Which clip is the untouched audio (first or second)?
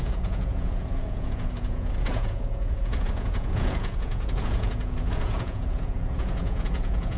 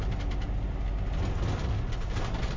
second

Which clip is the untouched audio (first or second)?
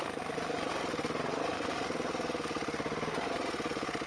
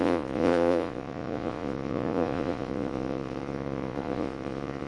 first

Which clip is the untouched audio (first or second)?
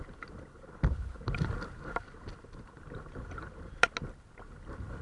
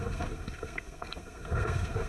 first